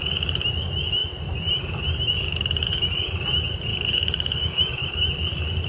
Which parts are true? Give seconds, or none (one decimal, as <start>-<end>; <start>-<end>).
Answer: 0.0-3.7; 5.0-5.7